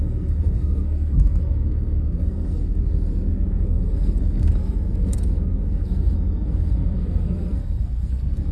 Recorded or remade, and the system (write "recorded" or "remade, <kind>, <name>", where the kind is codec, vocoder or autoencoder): remade, codec, SNAC